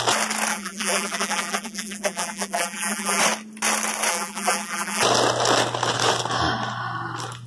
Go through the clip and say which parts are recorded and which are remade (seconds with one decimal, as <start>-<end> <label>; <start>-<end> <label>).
0.0-0.5 recorded; 0.5-3.2 remade; 3.2-4.1 recorded; 4.1-5.0 remade; 5.0-7.5 recorded